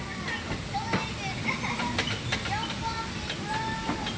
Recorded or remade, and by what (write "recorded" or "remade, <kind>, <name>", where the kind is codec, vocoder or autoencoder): recorded